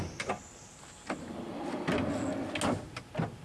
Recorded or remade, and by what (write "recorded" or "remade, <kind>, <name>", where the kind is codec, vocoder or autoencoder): recorded